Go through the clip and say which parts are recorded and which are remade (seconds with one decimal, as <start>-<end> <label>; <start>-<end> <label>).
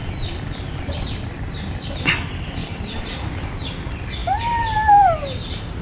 0.0-2.0 remade; 2.0-2.6 recorded; 2.6-3.4 remade; 3.4-5.8 recorded